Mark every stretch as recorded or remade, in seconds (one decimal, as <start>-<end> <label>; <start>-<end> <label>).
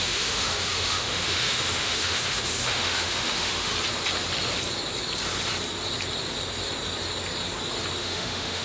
0.0-3.7 remade; 3.7-8.0 recorded; 8.0-8.6 remade